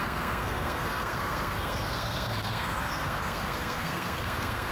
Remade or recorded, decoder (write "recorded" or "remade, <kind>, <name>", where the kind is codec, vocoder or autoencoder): remade, codec, SNAC